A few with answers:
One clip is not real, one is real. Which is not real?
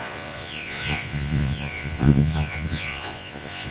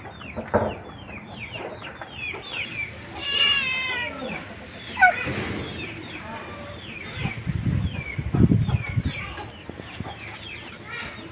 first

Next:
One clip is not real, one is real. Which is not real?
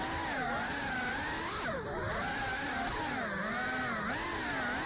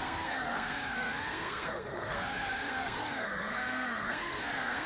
second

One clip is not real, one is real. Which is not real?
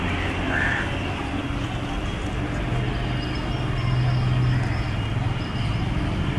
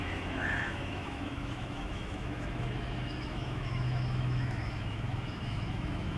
second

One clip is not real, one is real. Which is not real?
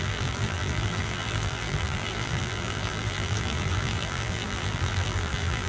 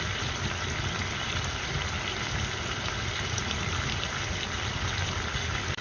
first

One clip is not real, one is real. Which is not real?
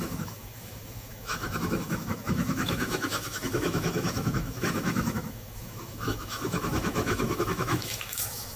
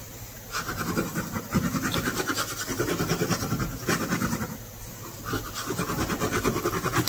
first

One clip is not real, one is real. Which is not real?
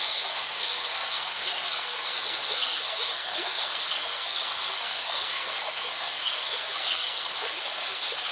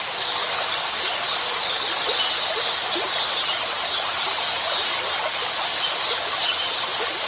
first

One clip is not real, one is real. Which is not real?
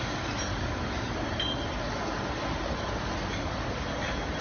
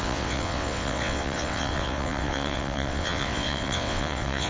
second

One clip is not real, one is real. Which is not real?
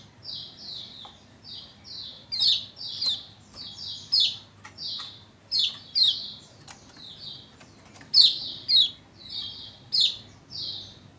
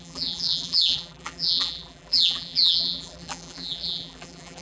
second